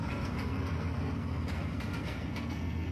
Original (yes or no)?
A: no